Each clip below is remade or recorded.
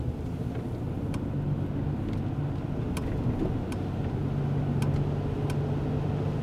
recorded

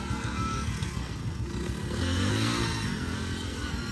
remade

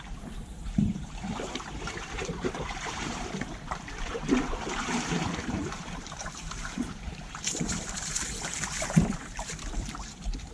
remade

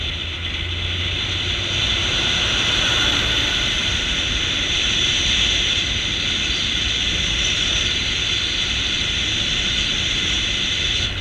recorded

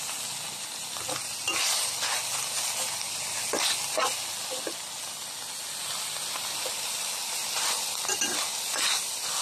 recorded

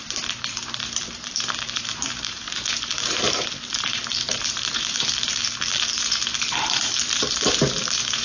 remade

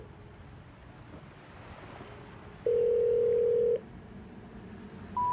recorded